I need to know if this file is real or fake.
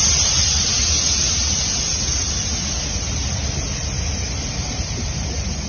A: real